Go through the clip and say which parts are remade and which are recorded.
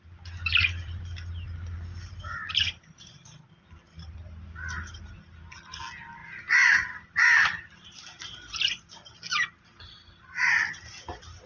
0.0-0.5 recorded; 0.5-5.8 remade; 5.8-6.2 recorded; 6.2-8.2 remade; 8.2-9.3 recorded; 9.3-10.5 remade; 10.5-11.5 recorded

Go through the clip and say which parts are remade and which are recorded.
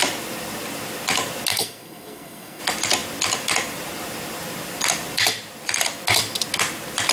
0.0-1.5 recorded; 1.5-2.6 remade; 2.6-7.1 recorded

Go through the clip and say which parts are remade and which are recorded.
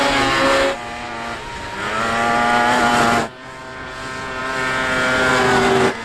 0.0-6.0 recorded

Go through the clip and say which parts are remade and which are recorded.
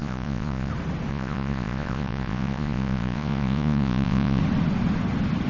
0.0-0.7 remade; 0.7-1.1 recorded; 1.1-4.4 remade; 4.4-5.5 recorded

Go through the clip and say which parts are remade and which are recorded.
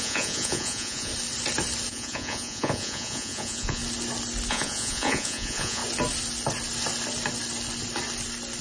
0.0-1.1 remade; 1.1-1.9 recorded; 1.9-3.8 remade; 3.8-4.5 recorded; 4.5-5.8 remade; 5.8-8.6 recorded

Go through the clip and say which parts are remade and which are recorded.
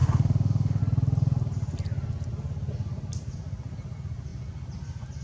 0.0-0.8 remade; 0.8-5.2 recorded